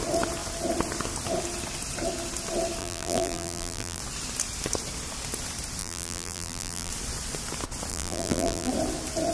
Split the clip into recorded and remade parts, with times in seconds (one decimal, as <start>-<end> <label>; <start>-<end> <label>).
0.0-2.8 recorded; 2.8-4.0 remade; 4.0-5.8 recorded; 5.8-6.9 remade; 6.9-7.9 recorded; 7.9-8.7 remade; 8.7-9.3 recorded